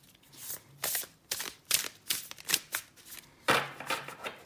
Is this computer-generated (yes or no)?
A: no